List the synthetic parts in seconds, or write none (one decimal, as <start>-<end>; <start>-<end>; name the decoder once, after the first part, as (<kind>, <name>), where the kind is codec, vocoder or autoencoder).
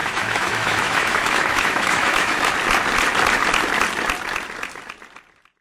0.0-2.5 (autoencoder, DAC-VAE)